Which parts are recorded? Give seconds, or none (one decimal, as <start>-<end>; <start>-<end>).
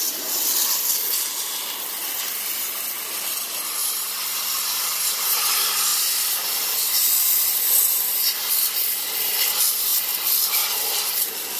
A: 0.0-3.8; 5.0-5.9; 6.7-11.6